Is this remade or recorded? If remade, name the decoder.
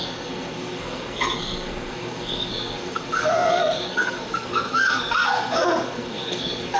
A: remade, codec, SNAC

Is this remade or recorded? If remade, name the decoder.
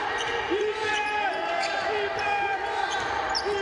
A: recorded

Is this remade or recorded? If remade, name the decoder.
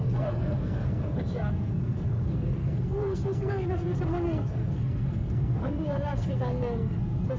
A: remade, codec, SNAC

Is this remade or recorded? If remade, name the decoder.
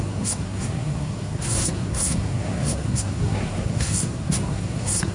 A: remade, codec, SNAC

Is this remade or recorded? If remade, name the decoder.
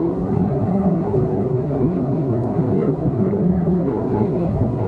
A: remade, codec, SNAC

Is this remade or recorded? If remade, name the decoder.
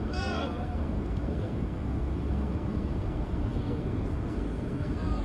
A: remade, codec, SNAC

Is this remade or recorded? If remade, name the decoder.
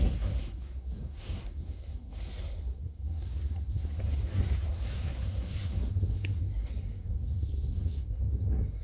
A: remade, codec, SNAC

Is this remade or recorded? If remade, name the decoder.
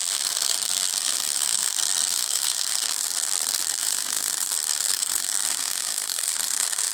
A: remade, codec, SNAC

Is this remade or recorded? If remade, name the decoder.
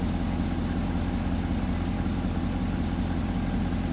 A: recorded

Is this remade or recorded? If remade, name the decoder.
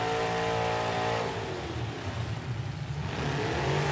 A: recorded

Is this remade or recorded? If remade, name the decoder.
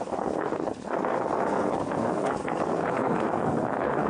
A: remade, codec, SNAC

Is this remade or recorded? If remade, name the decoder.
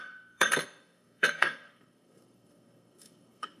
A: remade, codec, SNAC